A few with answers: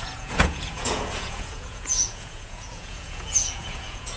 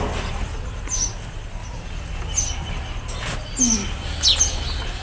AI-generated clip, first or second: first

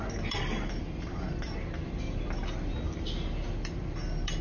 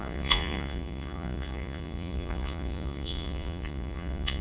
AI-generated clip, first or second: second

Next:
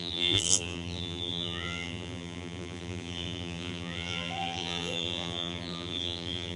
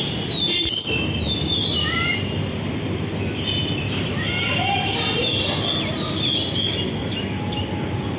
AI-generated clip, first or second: first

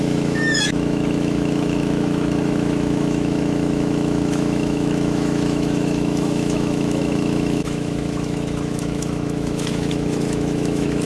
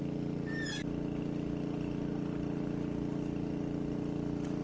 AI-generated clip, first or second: first